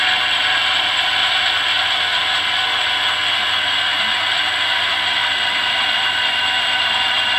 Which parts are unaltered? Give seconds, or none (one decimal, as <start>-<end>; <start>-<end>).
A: 1.2-3.8